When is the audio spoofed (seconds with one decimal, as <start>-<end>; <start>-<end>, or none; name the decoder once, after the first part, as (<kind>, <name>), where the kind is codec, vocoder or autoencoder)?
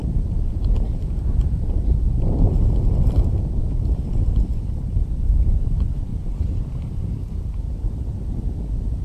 0.0-2.1 (vocoder, BigVGAN v2); 4.5-5.6; 6.1-7.9